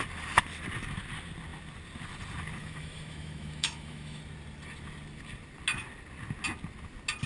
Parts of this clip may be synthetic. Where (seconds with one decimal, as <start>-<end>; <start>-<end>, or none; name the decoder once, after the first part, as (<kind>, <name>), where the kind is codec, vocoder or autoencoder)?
2.6-4.2 (autoencoder, DAC-VAE)

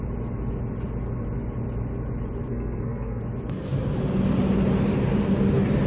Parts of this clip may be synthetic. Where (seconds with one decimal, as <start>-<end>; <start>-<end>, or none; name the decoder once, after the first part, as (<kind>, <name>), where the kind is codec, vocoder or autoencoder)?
2.5-3.2 (codec, SNAC)

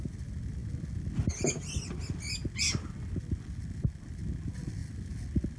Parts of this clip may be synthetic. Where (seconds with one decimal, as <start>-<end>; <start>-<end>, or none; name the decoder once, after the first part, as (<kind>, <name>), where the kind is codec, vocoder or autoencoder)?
none